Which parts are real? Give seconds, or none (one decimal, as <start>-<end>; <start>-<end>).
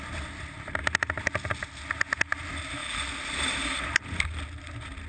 0.0-0.8; 1.5-2.8; 4.2-5.1